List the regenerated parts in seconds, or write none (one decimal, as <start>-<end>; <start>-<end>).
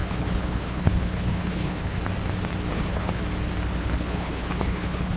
0.0-2.0; 2.7-3.2; 3.8-5.2